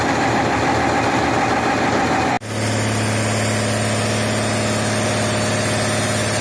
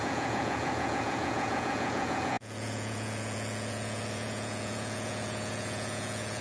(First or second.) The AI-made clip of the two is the second